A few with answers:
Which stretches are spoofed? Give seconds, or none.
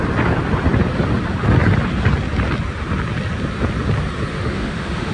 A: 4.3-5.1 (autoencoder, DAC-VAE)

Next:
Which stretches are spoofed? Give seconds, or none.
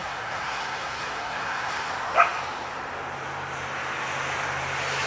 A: 0.0-1.9 (codec, SNAC)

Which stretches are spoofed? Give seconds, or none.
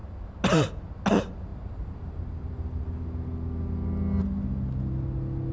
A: none